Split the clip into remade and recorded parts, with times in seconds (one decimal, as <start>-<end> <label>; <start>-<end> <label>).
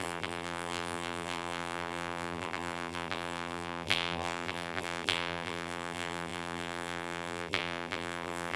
0.0-8.6 remade